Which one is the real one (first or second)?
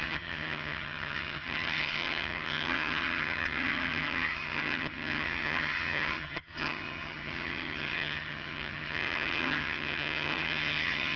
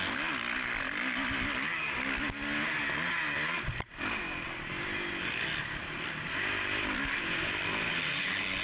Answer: second